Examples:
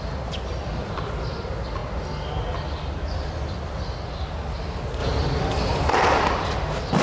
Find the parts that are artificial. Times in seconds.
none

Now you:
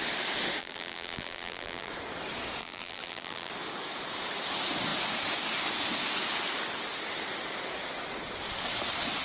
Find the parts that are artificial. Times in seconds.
0.6-1.9 (vocoder, BigVGAN v2); 2.6-3.5

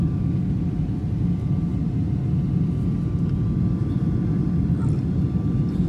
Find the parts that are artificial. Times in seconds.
none

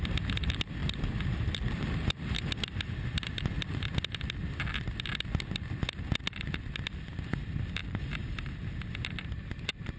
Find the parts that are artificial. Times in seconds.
7.8-8.5 (vocoder, BigVGAN v2)